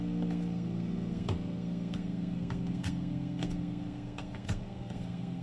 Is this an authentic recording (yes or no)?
no